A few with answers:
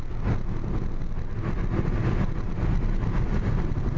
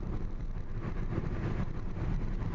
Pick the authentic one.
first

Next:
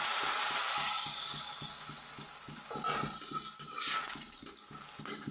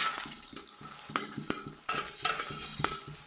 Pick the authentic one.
first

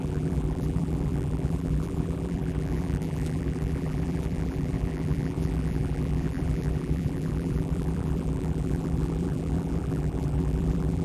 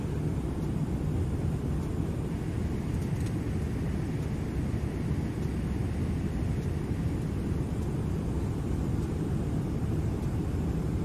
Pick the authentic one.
second